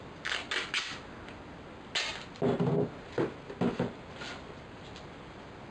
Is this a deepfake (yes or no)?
no